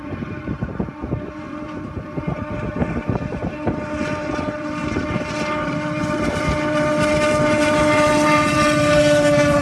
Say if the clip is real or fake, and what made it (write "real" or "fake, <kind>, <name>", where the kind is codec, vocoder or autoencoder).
fake, vocoder, BigVGAN v2